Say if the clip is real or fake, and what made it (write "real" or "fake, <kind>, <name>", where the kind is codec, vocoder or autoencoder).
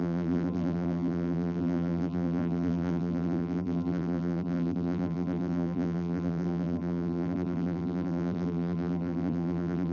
fake, vocoder, BigVGAN v2